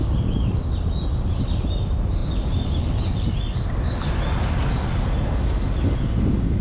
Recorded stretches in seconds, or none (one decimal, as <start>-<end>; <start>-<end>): 0.0-6.6